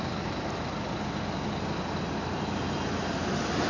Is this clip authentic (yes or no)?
yes